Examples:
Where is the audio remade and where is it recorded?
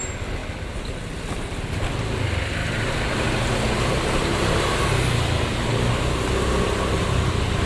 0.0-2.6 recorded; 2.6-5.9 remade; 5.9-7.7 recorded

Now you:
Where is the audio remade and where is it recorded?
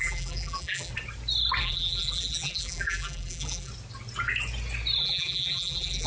0.0-0.9 remade; 0.9-1.6 recorded; 1.6-3.7 remade; 3.7-5.0 recorded; 5.0-6.1 remade